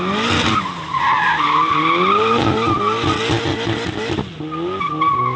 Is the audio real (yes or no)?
yes